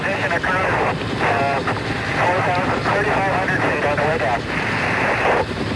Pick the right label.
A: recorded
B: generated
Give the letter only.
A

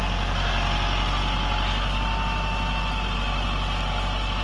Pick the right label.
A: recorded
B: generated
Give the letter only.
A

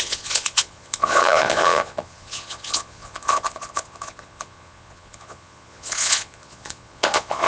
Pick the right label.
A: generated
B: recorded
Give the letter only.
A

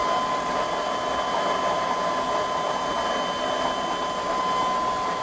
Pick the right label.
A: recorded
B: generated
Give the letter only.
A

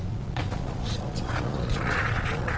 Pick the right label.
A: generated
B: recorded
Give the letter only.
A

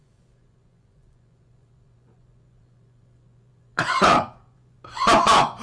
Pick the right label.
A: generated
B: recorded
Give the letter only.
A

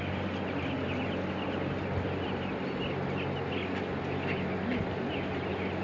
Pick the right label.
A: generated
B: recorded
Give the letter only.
B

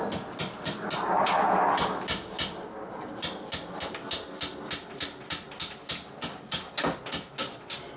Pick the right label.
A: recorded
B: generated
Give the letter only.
A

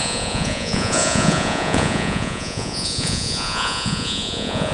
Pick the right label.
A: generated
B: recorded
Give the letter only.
A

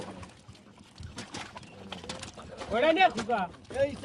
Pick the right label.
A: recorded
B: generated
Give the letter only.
A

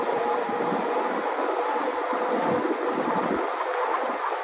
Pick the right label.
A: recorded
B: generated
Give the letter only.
A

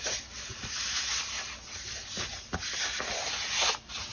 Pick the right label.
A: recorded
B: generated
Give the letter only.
A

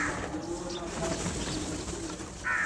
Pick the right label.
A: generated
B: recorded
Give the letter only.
B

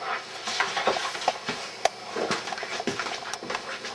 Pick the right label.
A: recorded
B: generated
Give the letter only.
A